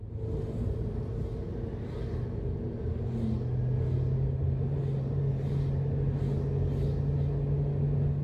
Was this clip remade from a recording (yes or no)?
no